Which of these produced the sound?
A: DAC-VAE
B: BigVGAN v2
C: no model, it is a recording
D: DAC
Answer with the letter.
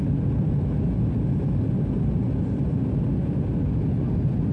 C